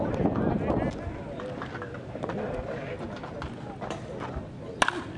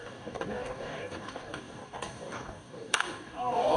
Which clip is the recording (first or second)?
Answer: first